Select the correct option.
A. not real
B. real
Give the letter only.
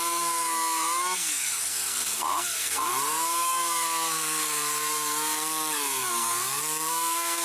A